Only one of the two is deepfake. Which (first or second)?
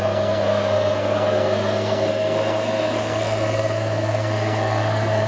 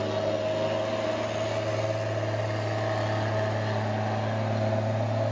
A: first